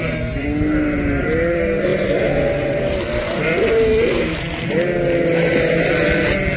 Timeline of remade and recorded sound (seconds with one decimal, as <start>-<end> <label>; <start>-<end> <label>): 0.0-6.6 recorded